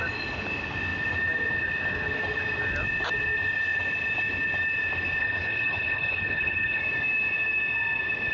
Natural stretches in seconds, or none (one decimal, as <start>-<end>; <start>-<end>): 0.0-5.2; 6.8-8.3